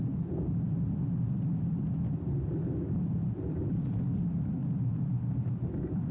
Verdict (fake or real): fake